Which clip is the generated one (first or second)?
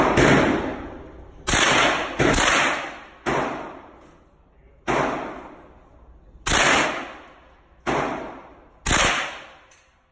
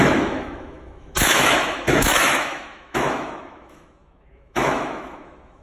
second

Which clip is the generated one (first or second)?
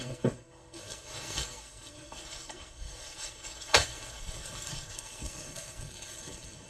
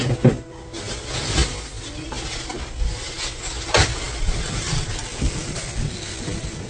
first